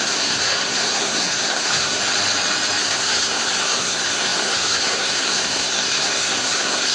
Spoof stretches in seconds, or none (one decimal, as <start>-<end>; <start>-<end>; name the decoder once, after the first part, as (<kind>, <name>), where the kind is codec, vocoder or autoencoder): 0.0-2.0 (codec, SNAC); 2.8-6.9